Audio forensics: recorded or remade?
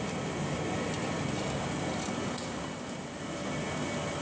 recorded